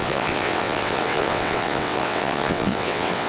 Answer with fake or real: fake